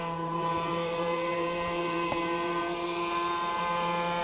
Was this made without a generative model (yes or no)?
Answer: no